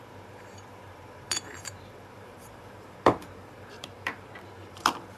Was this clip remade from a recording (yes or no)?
yes